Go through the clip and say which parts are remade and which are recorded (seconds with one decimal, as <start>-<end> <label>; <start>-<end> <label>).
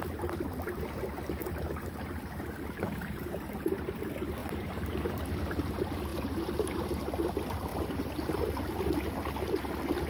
0.0-1.4 recorded; 1.4-4.0 remade; 4.0-4.4 recorded; 4.4-5.2 remade; 5.2-6.1 recorded; 6.1-7.1 remade; 7.1-7.7 recorded; 7.7-8.4 remade; 8.4-10.1 recorded